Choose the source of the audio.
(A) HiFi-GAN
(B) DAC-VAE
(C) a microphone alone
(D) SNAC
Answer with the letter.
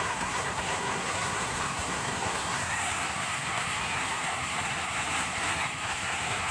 D